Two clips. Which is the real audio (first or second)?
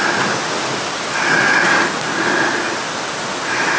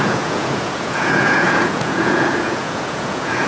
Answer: first